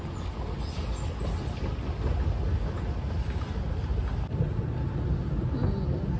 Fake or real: real